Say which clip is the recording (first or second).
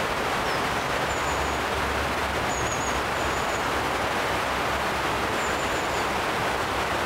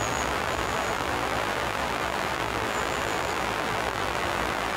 first